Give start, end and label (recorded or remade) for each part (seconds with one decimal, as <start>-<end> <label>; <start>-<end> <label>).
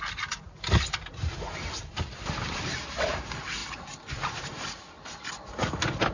0.0-6.1 recorded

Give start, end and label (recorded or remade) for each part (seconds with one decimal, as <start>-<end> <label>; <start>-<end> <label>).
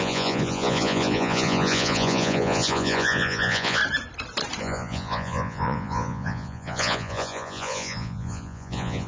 0.0-3.8 remade; 3.8-4.6 recorded; 4.6-9.1 remade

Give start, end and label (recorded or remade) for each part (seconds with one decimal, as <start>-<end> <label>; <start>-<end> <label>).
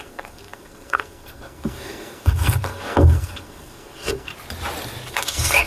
0.0-4.3 remade; 4.3-5.1 recorded; 5.1-5.7 remade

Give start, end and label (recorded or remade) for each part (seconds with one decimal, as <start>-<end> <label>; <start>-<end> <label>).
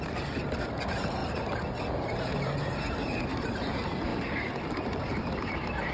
0.0-5.9 recorded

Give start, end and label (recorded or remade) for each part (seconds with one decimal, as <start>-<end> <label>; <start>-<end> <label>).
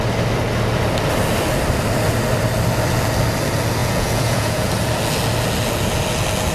0.0-3.8 recorded; 3.8-4.7 remade; 4.7-6.5 recorded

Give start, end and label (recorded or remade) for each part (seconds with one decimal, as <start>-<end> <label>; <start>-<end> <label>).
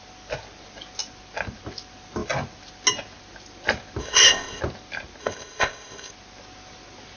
0.0-4.0 recorded; 4.0-4.6 remade; 4.6-5.2 recorded; 5.2-6.1 remade; 6.1-7.2 recorded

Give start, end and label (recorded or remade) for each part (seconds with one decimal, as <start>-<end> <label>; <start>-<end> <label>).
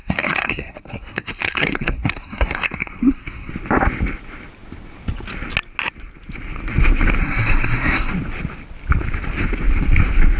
0.0-3.5 remade; 3.5-7.2 recorded; 7.2-8.1 remade; 8.1-10.4 recorded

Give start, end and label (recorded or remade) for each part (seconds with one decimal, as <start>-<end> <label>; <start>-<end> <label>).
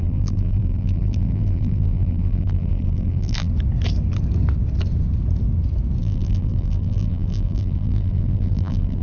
0.0-3.5 remade; 3.5-6.0 recorded; 6.0-9.0 remade